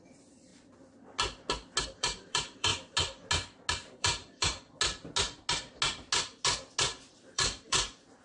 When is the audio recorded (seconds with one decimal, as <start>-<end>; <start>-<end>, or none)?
0.5-2.0; 2.7-3.7; 4.5-7.1